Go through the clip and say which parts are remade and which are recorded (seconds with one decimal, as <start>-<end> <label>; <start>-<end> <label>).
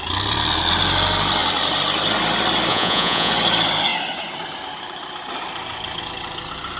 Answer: 0.0-2.7 recorded; 2.7-3.3 remade; 3.3-6.8 recorded